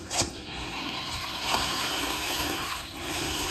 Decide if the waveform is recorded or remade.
remade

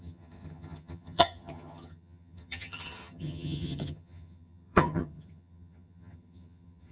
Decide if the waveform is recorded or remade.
remade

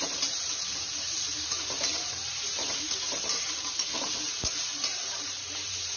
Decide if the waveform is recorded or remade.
remade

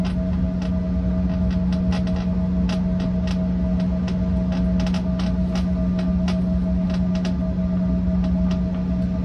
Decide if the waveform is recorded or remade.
recorded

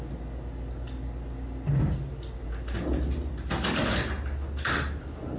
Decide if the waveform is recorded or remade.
recorded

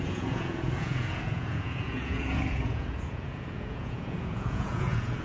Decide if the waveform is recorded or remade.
remade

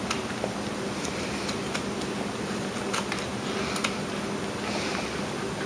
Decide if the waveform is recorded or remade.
recorded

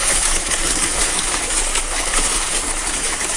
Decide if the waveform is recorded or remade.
remade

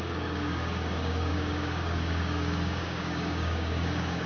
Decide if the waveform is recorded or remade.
remade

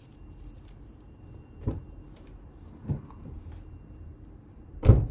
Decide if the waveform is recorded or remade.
remade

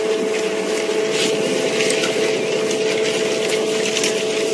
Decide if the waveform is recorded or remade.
recorded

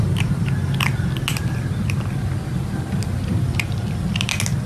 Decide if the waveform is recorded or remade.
recorded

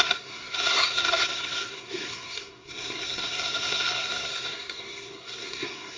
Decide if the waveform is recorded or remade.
remade